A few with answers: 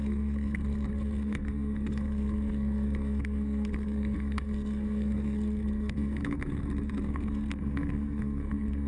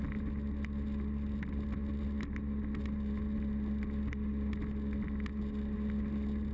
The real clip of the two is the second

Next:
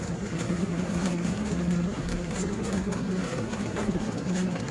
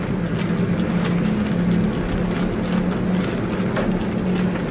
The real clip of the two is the second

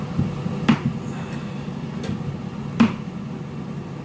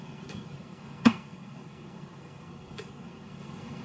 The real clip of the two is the first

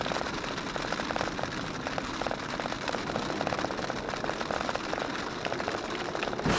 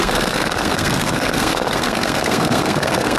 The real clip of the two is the first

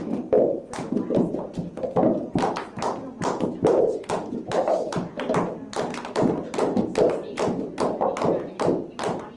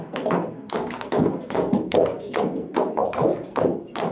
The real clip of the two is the first